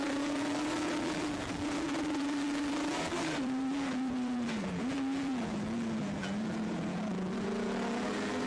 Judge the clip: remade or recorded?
remade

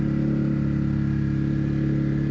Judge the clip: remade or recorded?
recorded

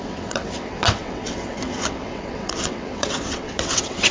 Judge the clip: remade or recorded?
remade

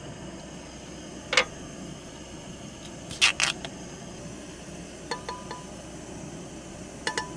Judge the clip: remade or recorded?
recorded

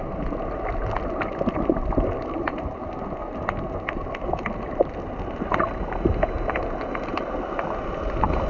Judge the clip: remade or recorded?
recorded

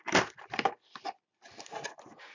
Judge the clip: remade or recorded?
recorded